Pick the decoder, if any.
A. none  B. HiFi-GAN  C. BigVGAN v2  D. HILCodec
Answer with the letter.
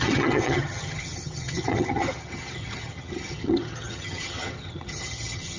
B